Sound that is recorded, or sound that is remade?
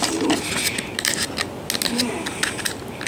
recorded